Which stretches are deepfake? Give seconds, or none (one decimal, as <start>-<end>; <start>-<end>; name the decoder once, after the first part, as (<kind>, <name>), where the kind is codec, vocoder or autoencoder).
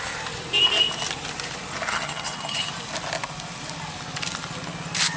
1.9-2.7 (vocoder, HiFi-GAN)